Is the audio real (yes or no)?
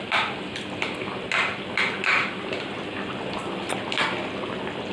yes